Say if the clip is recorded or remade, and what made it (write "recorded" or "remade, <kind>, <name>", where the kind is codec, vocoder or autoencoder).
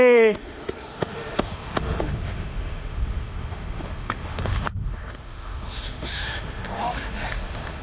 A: remade, autoencoder, DAC-VAE